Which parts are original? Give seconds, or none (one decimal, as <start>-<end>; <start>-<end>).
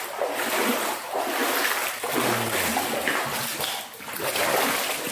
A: 0.0-5.1